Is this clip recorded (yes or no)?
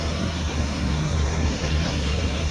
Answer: no